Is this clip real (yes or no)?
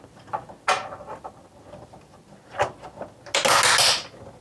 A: yes